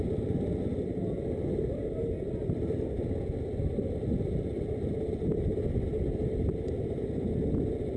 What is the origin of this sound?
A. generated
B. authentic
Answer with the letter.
B